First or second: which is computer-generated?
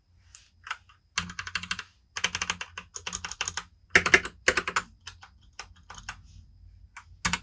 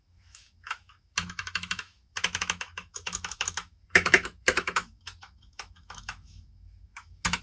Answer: second